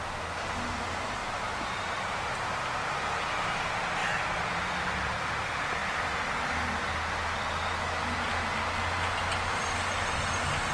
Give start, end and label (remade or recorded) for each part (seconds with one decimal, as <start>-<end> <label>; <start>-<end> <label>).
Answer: 0.0-1.2 recorded; 1.2-2.9 remade; 2.9-10.7 recorded